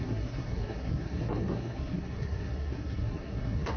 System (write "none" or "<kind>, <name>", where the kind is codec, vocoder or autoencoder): codec, SNAC